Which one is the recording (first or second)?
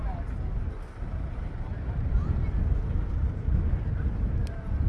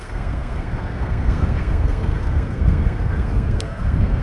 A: first